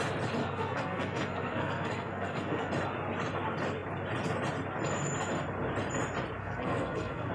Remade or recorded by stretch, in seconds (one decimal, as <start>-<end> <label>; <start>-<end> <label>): 0.0-0.4 recorded; 0.4-2.7 remade; 2.7-6.4 recorded; 6.4-7.3 remade